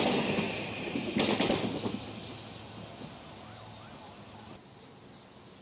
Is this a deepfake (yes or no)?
no